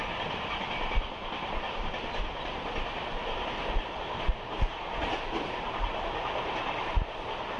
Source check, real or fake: real